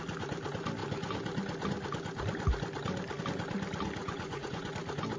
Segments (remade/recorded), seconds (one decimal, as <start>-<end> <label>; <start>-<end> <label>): 0.0-4.0 recorded; 4.0-4.7 remade; 4.7-5.2 recorded

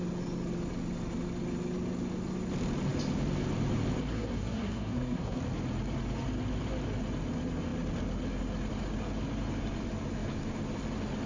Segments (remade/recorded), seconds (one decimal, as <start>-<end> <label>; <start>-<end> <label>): 0.0-4.1 recorded; 4.1-5.4 remade; 5.4-11.3 recorded